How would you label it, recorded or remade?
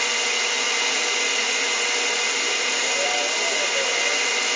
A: recorded